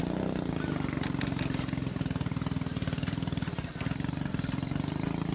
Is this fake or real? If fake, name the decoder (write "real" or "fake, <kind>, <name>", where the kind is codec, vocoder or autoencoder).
real